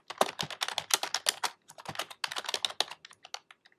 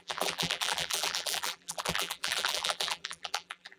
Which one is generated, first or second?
second